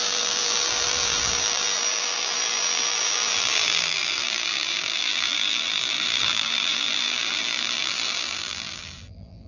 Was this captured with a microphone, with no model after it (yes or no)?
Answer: no